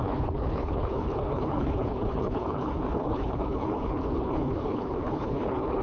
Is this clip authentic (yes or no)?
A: no